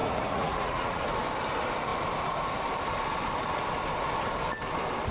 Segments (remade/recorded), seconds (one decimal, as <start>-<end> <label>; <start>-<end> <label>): 0.0-1.0 remade; 1.0-5.1 recorded